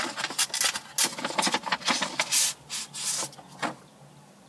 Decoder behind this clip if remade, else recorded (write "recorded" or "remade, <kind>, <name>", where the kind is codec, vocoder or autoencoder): recorded